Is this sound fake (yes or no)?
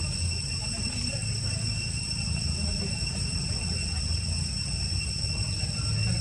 no